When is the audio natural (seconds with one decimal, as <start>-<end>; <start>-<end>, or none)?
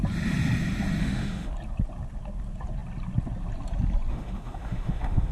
0.0-1.0; 1.5-4.1